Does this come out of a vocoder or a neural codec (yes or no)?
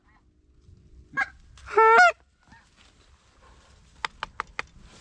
no